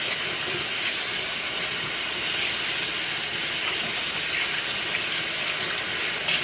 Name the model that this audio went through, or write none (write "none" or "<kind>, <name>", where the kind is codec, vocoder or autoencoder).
none